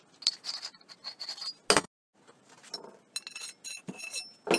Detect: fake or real real